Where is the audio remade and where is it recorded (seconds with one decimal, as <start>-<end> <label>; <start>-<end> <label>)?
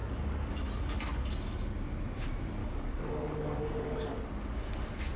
0.0-0.5 remade; 0.5-2.6 recorded; 2.6-4.2 remade; 4.2-5.2 recorded